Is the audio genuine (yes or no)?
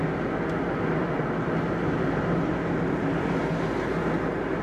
yes